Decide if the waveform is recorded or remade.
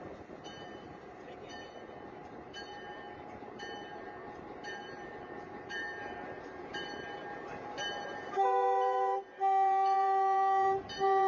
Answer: remade